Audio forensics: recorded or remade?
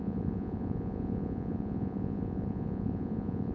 remade